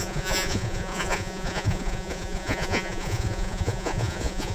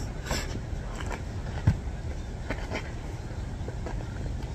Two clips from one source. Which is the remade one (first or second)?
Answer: first